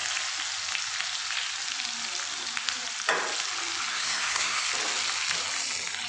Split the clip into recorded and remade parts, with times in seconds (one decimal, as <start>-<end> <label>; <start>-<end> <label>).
0.0-3.9 recorded; 3.9-4.7 remade; 4.7-6.1 recorded